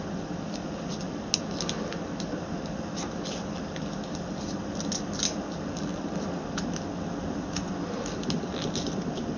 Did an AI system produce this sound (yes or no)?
no